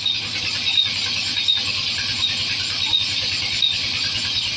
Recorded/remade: recorded